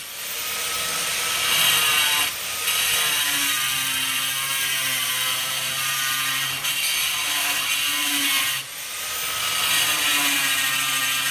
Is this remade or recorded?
recorded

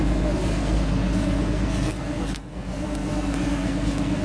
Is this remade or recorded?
remade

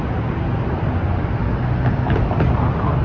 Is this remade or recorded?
recorded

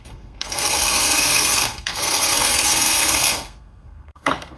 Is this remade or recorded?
remade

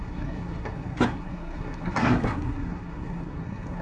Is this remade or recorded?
remade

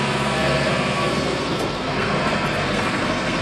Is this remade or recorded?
remade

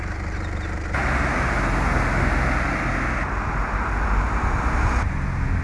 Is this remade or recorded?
recorded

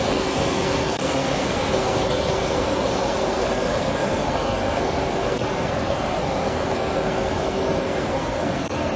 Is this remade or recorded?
remade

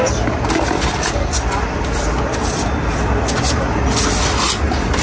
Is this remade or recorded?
recorded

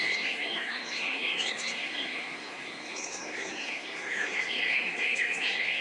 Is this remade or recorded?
remade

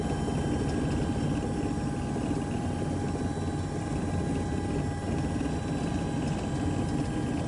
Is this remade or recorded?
recorded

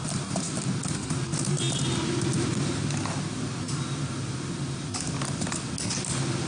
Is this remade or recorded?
recorded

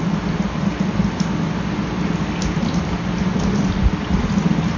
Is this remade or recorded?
recorded